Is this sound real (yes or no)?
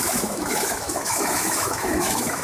no